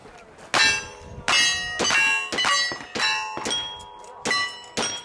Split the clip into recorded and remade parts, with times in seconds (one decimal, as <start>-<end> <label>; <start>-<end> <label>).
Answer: 0.0-5.0 recorded